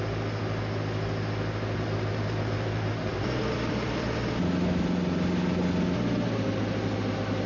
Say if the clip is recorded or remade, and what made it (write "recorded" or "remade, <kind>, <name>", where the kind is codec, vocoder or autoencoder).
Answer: recorded